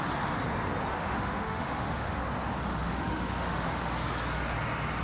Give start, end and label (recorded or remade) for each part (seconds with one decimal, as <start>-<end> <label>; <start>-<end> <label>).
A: 0.0-0.9 recorded; 0.9-2.2 remade; 2.2-2.7 recorded; 2.7-3.9 remade; 3.9-5.0 recorded